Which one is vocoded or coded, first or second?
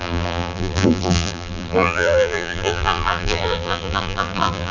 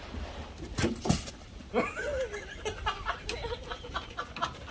first